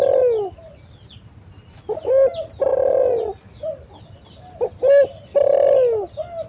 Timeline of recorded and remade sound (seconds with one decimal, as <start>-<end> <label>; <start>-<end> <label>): 0.0-6.5 recorded